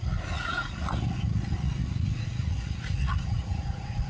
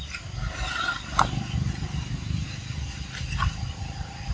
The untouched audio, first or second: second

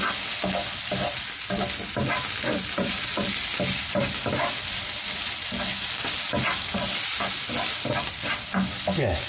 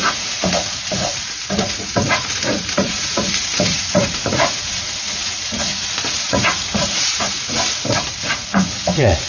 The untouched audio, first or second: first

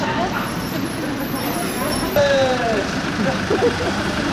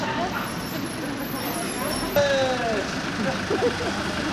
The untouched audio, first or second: second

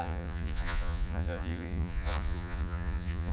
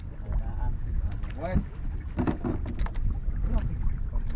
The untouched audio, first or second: second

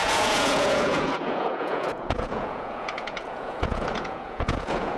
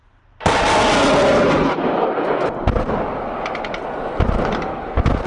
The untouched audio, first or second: second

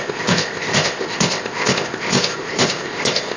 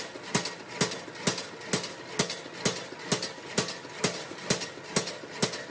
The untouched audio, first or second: second